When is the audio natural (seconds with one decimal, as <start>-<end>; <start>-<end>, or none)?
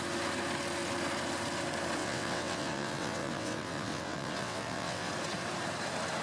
0.0-2.0; 5.1-6.2